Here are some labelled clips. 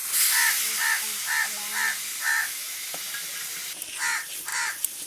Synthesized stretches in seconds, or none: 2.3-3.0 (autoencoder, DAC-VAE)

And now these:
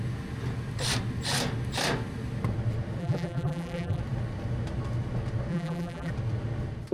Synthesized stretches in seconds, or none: 3.0-4.0 (vocoder, BigVGAN v2); 5.5-6.1

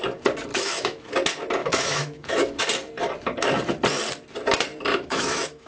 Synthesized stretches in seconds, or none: 0.5-1.1 (autoencoder, DAC-VAE); 1.6-2.6; 4.9-5.7

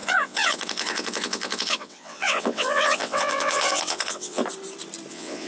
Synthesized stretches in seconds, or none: 0.0-4.4 (vocoder, WaveNeXt); 5.1-5.5